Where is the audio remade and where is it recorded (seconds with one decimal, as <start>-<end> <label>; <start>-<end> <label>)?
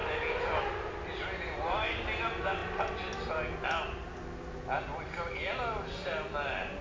0.0-6.8 recorded